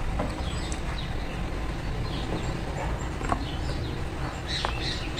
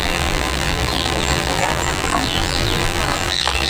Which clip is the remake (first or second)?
second